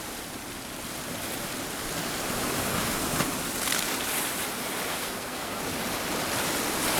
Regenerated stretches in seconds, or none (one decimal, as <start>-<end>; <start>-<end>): 4.9-5.6